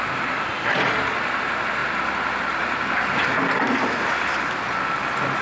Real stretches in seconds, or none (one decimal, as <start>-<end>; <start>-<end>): 0.0-5.4